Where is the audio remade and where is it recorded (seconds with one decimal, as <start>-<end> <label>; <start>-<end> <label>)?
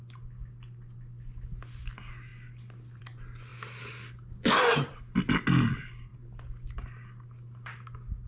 0.0-8.3 recorded